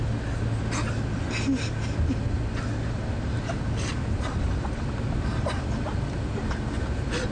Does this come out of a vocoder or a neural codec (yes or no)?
no